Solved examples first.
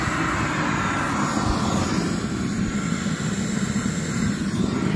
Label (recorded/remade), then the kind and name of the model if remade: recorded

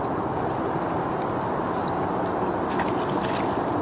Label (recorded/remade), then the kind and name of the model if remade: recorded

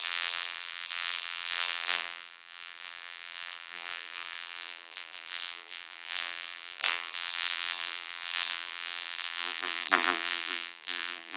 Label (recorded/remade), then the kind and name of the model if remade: remade, vocoder, BigVGAN v2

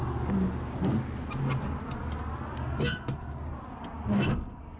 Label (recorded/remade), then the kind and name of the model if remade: recorded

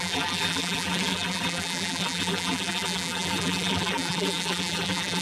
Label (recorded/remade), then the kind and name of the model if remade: remade, vocoder, BigVGAN v2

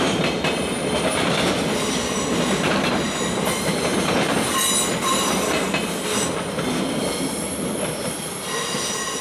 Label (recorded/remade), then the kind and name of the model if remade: recorded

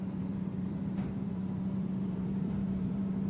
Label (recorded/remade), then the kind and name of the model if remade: remade, vocoder, BigVGAN v2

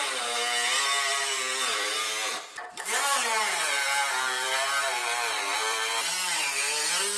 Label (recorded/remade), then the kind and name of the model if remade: remade, vocoder, BigVGAN v2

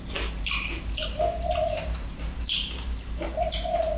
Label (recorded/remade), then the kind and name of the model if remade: remade, vocoder, BigVGAN v2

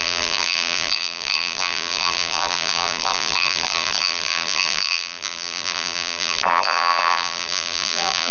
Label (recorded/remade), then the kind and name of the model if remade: remade, vocoder, BigVGAN v2